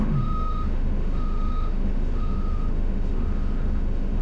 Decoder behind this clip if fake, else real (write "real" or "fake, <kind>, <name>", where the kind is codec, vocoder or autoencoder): fake, autoencoder, DAC-VAE